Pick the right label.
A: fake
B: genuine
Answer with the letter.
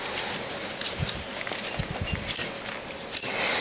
B